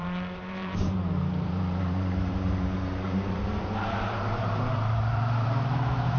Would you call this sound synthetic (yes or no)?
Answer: yes